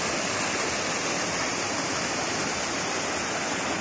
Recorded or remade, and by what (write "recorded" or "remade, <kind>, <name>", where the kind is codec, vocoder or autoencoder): recorded